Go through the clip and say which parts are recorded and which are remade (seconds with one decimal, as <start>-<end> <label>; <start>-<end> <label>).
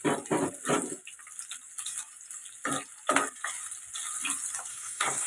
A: 0.0-4.7 recorded; 4.7-5.3 remade